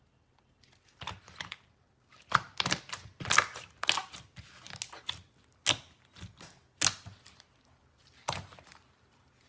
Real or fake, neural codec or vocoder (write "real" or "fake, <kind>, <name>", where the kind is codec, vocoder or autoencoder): real